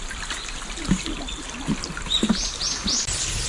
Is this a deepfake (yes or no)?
no